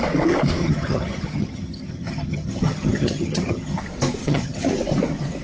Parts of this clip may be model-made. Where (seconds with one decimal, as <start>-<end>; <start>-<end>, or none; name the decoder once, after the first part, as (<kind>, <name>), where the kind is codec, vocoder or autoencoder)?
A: 0.6-3.8 (vocoder, HiFi-GAN); 4.2-4.7